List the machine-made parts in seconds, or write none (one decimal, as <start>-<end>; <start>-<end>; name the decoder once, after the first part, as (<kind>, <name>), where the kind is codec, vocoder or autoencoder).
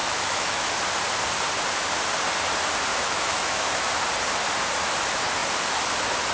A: 0.0-0.7 (autoencoder, DAC-VAE); 2.9-3.9